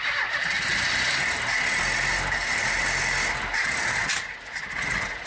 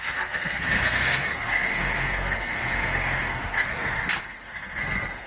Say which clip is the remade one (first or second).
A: second